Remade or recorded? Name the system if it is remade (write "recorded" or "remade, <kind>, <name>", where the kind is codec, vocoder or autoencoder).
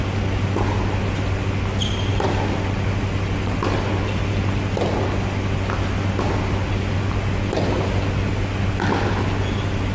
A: recorded